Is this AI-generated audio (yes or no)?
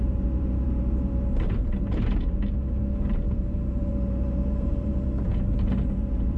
yes